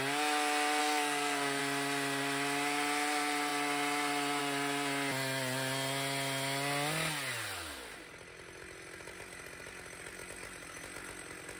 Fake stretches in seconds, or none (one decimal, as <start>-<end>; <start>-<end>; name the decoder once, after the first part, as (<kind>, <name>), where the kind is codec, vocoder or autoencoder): 0.8-1.6 (codec, SNAC)